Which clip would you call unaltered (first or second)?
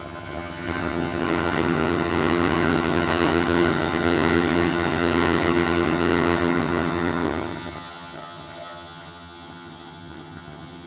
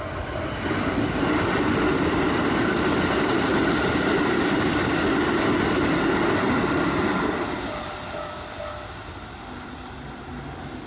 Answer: second